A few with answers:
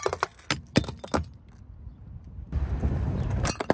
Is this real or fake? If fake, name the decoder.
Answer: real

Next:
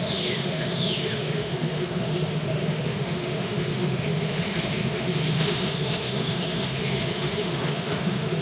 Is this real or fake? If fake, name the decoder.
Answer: fake, autoencoder, DAC-VAE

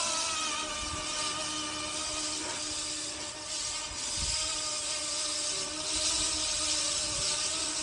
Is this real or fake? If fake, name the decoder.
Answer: real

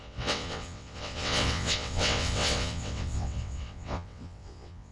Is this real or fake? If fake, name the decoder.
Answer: fake, vocoder, WaveNeXt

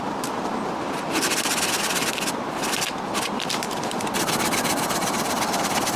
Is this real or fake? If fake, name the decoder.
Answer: fake, vocoder, BigVGAN v2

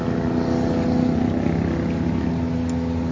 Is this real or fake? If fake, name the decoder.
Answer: real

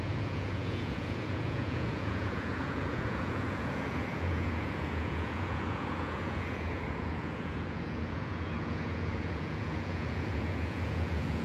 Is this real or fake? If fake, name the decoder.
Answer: fake, vocoder, Vocos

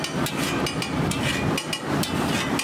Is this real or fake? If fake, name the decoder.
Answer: real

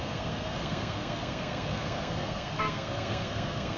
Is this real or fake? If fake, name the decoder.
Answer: fake, codec, SNAC